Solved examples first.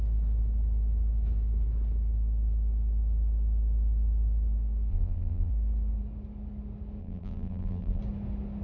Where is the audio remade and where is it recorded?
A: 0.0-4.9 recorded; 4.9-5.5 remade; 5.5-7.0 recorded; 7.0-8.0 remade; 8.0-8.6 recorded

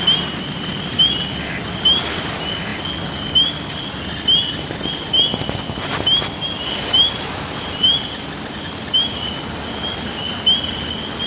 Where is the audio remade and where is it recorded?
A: 0.0-11.3 recorded

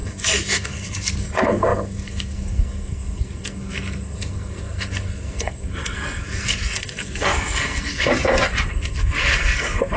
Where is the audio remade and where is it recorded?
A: 0.0-8.1 remade; 8.1-8.7 recorded; 8.7-10.0 remade

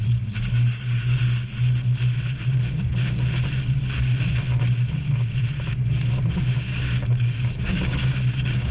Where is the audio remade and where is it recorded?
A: 0.0-1.5 remade; 1.5-6.3 recorded; 6.3-8.7 remade

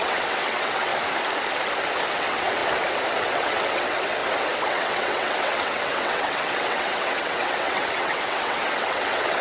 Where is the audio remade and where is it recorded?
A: 0.0-0.9 remade; 0.9-2.1 recorded; 2.1-2.6 remade; 2.6-3.2 recorded; 3.2-4.2 remade; 4.2-4.7 recorded; 4.7-9.4 remade

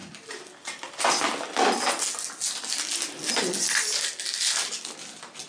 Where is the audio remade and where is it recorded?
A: 0.0-5.5 recorded

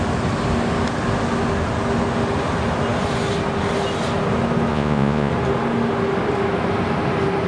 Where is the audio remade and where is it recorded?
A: 0.0-4.7 recorded; 4.7-5.3 remade; 5.3-7.5 recorded

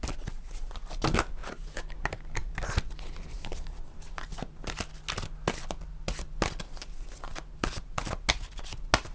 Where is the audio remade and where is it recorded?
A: 0.0-9.1 recorded